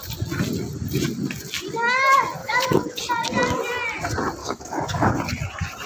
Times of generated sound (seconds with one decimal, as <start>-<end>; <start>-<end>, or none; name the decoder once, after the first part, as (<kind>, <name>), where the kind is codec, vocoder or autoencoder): 2.4-3.0 (codec, DAC); 4.4-5.1